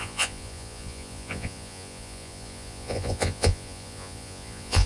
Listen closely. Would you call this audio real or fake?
fake